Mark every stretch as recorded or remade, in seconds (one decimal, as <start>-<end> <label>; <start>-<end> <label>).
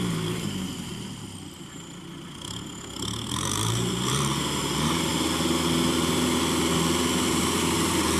0.0-0.9 remade; 0.9-3.3 recorded; 3.3-5.1 remade; 5.1-7.3 recorded; 7.3-8.2 remade